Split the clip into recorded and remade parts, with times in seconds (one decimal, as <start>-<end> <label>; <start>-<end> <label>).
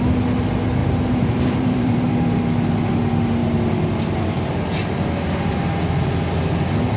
0.0-0.8 recorded; 0.8-2.1 remade; 2.1-7.0 recorded